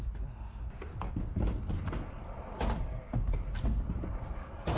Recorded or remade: recorded